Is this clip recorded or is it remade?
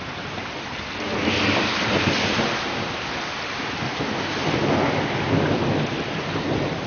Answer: recorded